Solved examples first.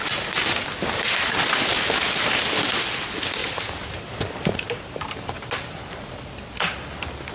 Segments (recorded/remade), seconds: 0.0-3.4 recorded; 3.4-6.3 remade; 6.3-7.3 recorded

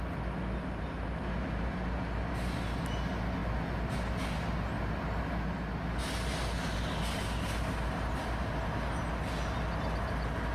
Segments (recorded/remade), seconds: 0.0-10.5 recorded

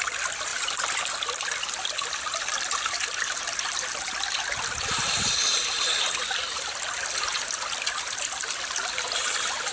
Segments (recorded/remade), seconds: 0.0-0.5 recorded; 0.5-1.5 remade; 1.5-2.3 recorded; 2.3-4.2 remade; 4.2-5.5 recorded; 5.5-7.3 remade; 7.3-9.7 recorded

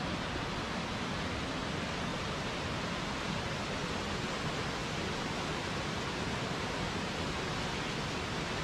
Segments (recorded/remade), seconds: 0.0-2.1 recorded; 2.1-2.6 remade; 2.6-4.8 recorded; 4.8-7.2 remade; 7.2-8.6 recorded